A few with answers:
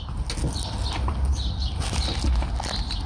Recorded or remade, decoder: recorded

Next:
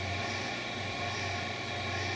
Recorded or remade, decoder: recorded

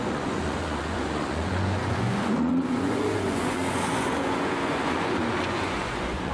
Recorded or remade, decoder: remade, vocoder, Vocos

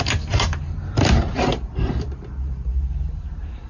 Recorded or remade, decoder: remade, vocoder, BigVGAN v2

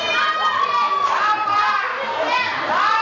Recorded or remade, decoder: recorded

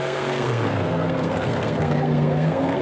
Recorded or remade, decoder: remade, codec, SNAC